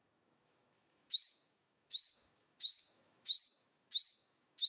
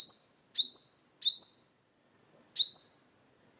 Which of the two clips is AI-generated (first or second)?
first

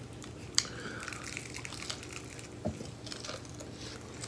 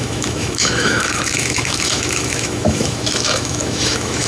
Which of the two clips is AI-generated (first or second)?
second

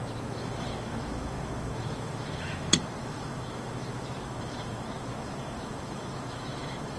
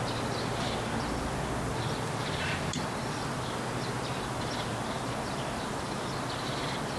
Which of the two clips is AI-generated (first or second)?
first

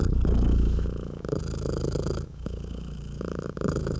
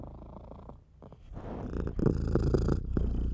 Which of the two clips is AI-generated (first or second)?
first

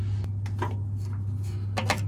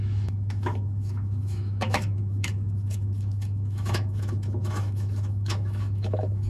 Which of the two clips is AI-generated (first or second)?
second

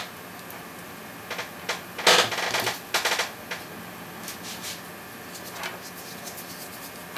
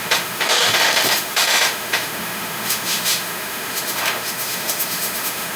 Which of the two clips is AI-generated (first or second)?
second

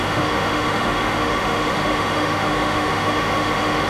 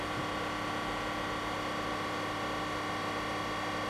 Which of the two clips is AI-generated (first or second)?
first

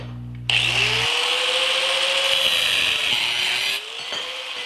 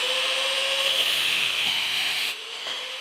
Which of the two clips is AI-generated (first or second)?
second